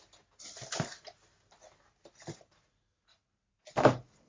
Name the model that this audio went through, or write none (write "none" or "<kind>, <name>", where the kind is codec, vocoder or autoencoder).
none